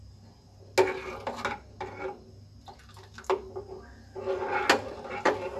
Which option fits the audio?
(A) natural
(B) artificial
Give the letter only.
A